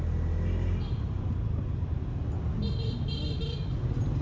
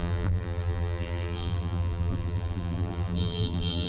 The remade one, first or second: second